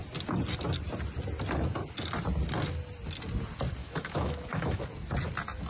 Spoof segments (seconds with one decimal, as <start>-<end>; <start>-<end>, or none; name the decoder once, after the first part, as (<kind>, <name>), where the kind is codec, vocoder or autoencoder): 3.8-4.8 (autoencoder, DAC-VAE)